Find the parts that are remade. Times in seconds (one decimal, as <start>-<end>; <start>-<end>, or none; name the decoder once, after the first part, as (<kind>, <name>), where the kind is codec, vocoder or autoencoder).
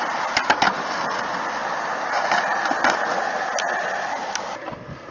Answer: none